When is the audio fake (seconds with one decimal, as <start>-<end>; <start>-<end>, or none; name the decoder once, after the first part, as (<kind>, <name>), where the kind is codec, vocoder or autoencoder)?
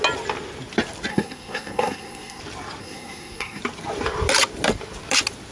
1.1-2.4 (codec, SNAC); 2.8-3.6